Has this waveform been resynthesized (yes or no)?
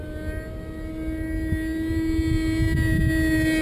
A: no